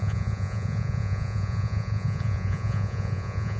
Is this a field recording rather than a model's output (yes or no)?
no